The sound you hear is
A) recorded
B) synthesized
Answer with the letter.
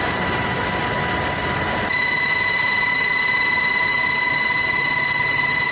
A